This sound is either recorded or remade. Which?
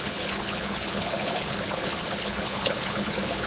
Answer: remade